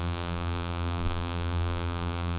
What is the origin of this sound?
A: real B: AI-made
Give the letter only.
B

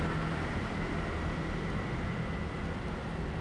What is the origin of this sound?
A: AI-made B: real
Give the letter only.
B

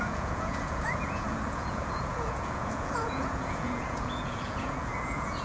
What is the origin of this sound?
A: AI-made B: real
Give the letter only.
A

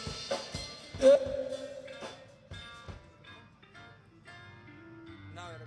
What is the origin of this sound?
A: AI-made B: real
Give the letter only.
B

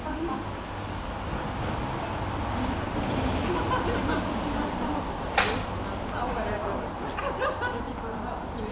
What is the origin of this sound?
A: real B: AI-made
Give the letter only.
A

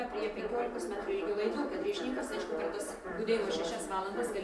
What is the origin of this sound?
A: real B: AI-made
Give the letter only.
A